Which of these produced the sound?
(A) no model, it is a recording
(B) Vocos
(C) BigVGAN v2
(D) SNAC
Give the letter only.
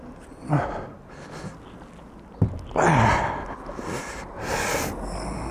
A